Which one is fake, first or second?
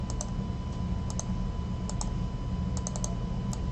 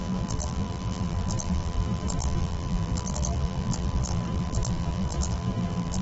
second